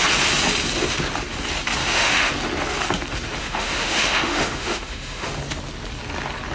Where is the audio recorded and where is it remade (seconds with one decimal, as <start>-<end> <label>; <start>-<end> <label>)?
0.0-1.8 recorded; 1.8-2.3 remade; 2.3-3.4 recorded; 3.4-5.3 remade; 5.3-6.5 recorded